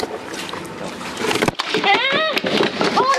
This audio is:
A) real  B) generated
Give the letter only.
B